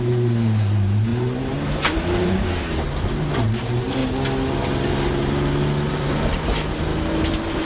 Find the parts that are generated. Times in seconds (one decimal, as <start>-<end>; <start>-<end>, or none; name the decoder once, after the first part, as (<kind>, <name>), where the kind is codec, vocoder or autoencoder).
0.0-4.0 (vocoder, BigVGAN v2); 5.9-7.6